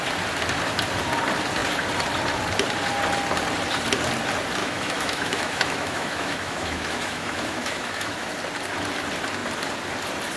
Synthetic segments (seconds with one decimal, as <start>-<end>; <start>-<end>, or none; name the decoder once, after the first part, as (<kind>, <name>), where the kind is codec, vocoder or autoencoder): 4.6-8.3 (autoencoder, DAC-VAE)